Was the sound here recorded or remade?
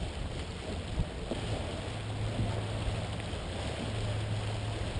recorded